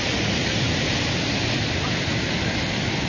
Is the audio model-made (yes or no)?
no